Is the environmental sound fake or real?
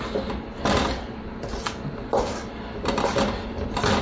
real